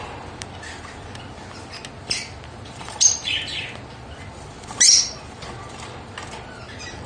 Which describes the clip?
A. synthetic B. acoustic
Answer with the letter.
B